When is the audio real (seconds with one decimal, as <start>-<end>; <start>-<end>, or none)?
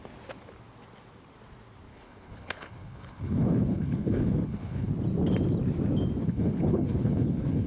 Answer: 0.0-1.9; 4.9-6.2